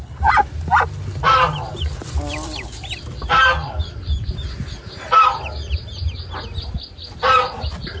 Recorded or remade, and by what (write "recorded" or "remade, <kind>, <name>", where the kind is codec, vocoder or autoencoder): recorded